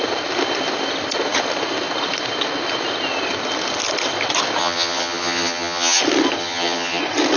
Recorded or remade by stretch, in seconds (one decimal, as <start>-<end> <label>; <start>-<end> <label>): 0.0-4.6 recorded; 4.6-6.0 remade; 6.0-6.4 recorded; 6.4-7.0 remade; 7.0-7.4 recorded